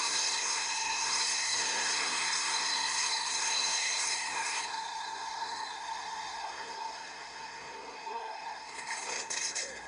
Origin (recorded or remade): remade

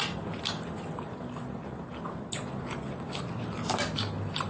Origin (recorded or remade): recorded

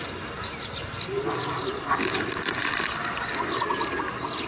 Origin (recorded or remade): recorded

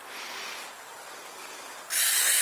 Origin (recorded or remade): recorded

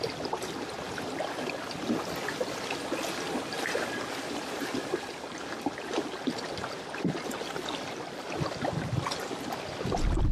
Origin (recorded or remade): recorded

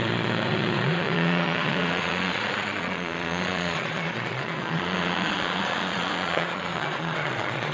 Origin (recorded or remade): remade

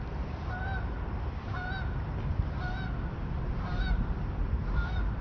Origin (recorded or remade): recorded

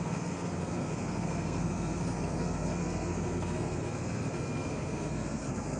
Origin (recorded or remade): remade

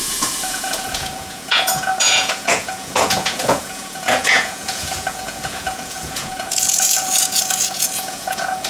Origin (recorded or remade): remade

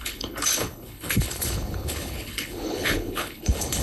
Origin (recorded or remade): remade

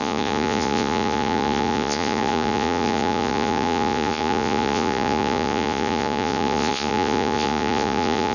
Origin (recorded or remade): remade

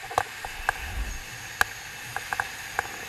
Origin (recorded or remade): recorded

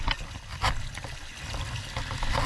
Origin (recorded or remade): recorded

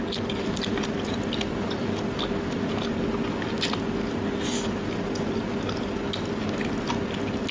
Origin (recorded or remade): recorded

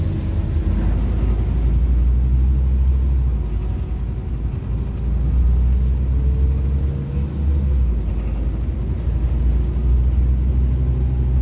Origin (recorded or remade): recorded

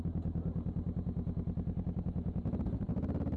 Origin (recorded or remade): recorded